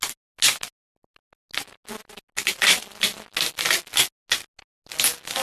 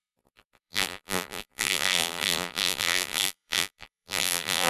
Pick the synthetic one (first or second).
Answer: second